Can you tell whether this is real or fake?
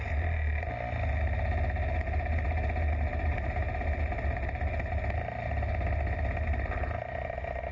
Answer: real